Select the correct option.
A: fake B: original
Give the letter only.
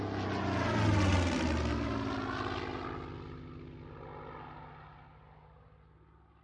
B